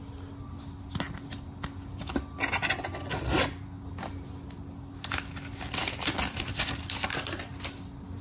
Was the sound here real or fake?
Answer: real